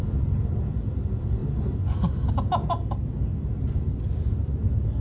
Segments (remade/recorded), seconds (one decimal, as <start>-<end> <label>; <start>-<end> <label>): 0.0-5.0 recorded